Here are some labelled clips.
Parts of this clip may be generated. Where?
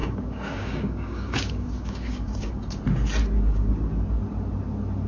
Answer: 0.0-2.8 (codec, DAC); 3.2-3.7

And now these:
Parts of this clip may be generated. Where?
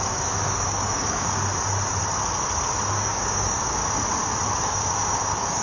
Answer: 0.0-1.5 (codec, DAC); 2.9-3.8; 4.6-5.6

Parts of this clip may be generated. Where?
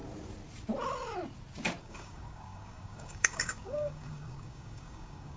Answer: 1.8-5.4 (codec, DAC)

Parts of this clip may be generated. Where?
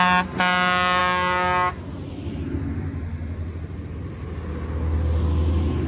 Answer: none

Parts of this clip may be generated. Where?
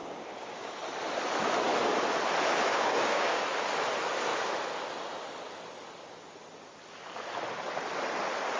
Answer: 0.0-0.8 (codec, DAC); 2.7-3.4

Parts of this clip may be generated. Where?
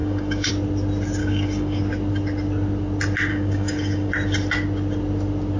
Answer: 0.0-0.5 (codec, DAC); 1.2-1.8; 3.3-4.1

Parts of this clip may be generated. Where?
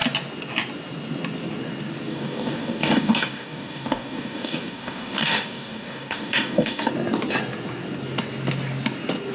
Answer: 2.1-6.9 (codec, DAC)